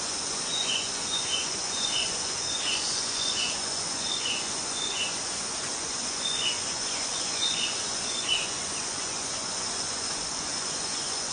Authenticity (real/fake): fake